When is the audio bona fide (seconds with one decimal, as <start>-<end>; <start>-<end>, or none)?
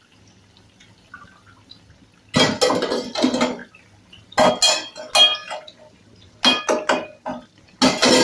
0.0-8.2